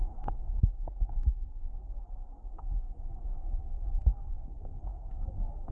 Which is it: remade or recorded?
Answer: remade